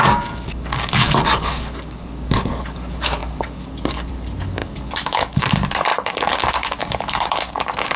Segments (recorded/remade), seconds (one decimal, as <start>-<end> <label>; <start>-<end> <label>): 0.0-8.0 remade